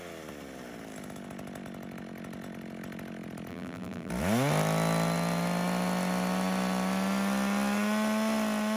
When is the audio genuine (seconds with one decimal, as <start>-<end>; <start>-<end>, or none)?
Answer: 0.0-3.5; 4.1-8.8